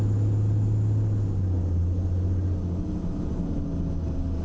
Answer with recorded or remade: recorded